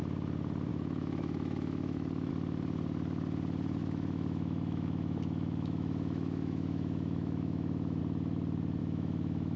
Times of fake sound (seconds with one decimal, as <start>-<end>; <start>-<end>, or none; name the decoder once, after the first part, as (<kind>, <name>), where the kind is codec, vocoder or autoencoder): 0.7-2.3 (autoencoder, DAC-VAE); 3.8-8.0; 8.8-9.6